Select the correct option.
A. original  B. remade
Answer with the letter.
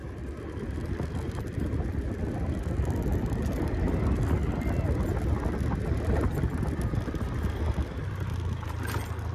A